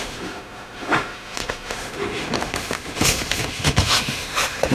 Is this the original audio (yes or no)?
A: no